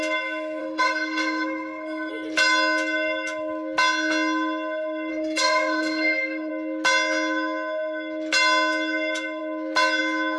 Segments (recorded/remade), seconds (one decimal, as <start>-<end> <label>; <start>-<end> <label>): 0.0-0.6 recorded; 0.6-2.1 remade; 2.1-5.1 recorded; 5.1-6.5 remade; 6.5-10.4 recorded